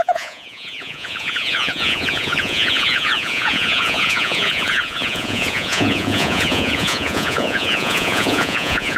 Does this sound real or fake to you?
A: fake